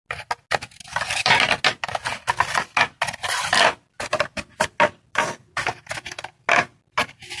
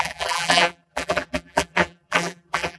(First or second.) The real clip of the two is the first